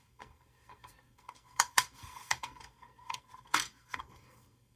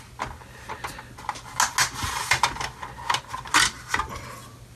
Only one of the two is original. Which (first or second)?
second